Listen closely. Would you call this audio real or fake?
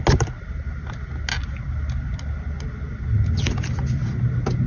real